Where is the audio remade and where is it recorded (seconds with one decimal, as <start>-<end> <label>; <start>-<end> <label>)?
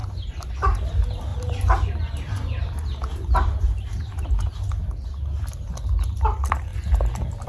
0.0-0.9 remade; 0.9-1.3 recorded; 1.3-4.7 remade; 4.7-7.5 recorded